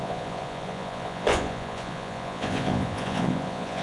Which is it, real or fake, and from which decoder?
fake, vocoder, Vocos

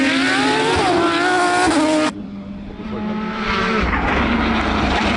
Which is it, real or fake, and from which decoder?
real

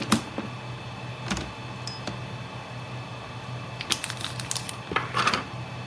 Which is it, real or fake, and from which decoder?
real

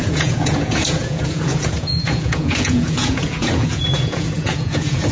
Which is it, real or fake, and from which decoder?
fake, vocoder, Vocos